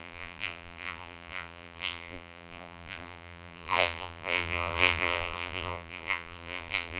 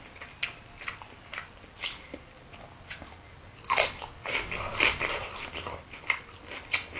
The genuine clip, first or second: second